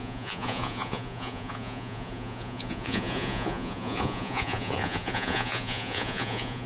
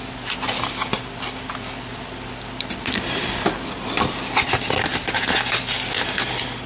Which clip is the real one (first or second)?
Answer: second